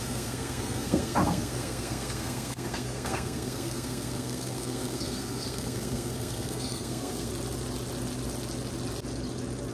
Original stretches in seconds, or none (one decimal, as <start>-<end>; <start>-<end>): 7.3-9.7